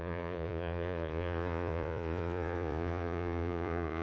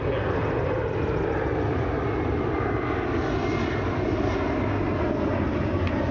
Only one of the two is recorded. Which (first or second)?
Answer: second